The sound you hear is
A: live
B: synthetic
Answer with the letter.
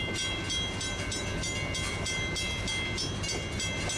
A